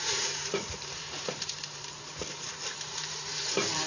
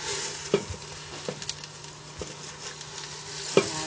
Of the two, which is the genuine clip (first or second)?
second